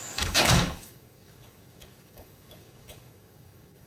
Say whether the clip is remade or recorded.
remade